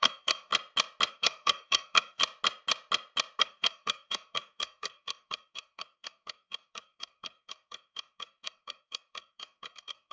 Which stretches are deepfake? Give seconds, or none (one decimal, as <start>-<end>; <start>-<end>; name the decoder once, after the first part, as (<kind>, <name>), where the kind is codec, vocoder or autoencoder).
0.0-0.5 (codec, SNAC); 1.1-2.2; 3.4-10.1